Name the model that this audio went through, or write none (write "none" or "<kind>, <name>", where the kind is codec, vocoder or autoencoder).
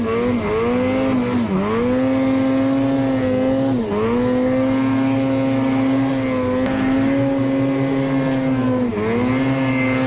none